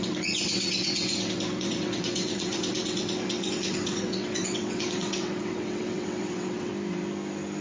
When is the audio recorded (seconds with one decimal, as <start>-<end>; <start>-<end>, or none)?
6.7-7.6